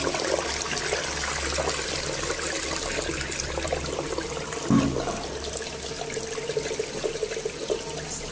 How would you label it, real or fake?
real